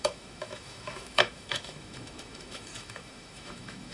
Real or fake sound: fake